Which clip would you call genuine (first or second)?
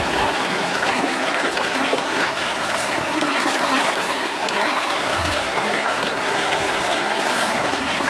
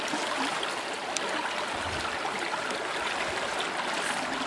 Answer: second